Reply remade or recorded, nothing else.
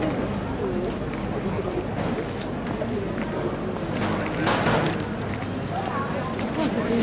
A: recorded